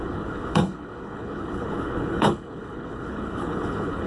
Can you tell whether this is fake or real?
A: fake